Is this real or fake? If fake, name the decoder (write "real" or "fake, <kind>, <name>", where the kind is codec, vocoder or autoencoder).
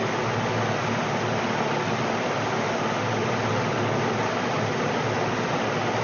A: real